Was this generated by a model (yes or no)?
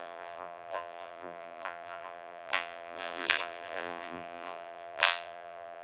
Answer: yes